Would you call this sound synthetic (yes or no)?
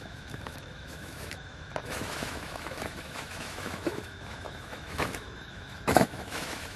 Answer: yes